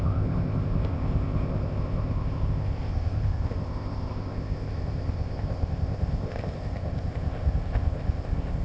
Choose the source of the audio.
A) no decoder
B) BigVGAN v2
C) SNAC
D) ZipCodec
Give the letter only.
D